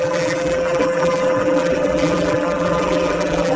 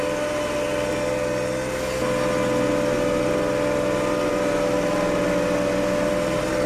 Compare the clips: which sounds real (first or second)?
second